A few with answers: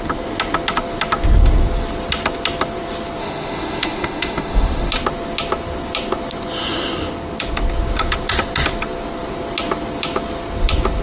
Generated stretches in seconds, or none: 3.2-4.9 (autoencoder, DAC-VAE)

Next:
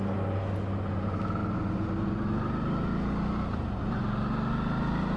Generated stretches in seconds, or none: none